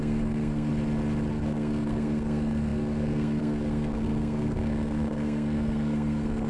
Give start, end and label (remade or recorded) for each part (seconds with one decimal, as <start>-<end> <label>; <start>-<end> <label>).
0.0-0.7 remade; 0.7-1.3 recorded; 1.3-6.5 remade